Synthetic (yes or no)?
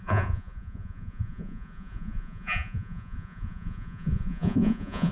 yes